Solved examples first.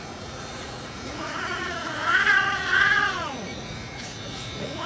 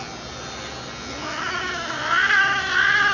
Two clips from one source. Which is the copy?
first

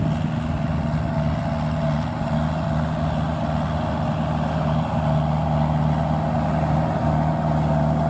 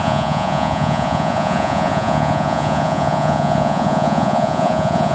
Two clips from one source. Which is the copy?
second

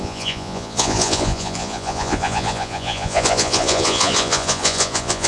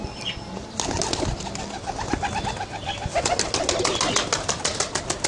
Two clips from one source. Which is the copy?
first